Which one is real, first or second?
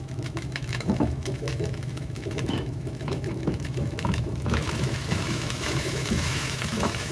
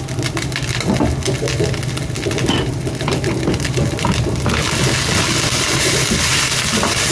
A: second